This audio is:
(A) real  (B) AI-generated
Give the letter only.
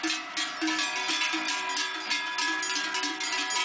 A